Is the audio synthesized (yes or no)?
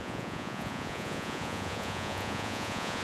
yes